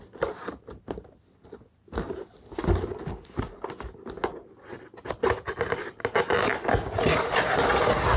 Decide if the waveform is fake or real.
real